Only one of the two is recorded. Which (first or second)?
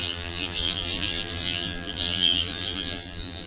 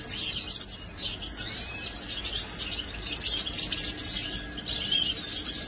second